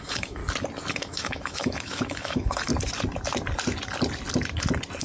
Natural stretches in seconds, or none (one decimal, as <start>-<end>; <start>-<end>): 0.4-0.9; 2.7-5.0

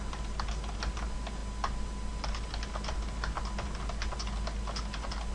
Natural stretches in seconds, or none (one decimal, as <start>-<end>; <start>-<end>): 0.0-5.3

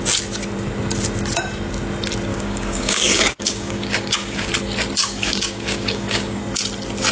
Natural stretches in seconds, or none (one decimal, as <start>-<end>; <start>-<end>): 0.0-2.3; 4.5-5.0; 6.4-7.1

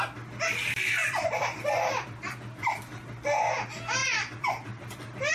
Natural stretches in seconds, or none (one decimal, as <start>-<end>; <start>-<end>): 0.0-1.0; 2.8-4.0

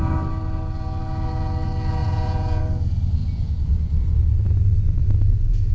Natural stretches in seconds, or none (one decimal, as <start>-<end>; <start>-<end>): 0.0-2.0; 2.6-3.2; 4.2-5.0

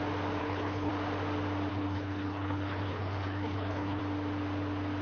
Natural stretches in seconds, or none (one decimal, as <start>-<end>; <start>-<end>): 0.0-0.4; 0.9-1.7; 4.0-5.0